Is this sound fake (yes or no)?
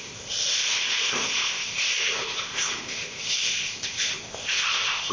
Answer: yes